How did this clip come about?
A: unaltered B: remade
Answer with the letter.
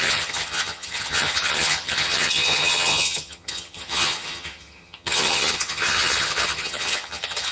B